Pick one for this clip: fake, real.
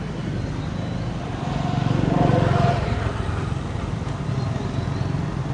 real